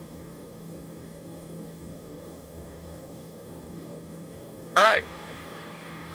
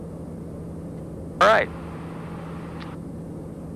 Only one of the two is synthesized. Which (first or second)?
first